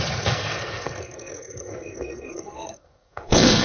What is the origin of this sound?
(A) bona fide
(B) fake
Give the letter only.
B